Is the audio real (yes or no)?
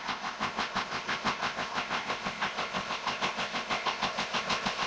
no